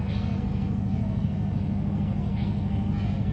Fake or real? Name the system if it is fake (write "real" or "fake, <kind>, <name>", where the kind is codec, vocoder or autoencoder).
fake, codec, SNAC